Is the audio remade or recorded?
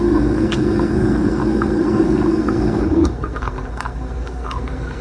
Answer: remade